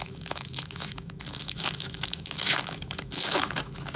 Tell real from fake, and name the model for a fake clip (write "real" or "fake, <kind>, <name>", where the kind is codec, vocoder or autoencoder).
fake, autoencoder, DAC-VAE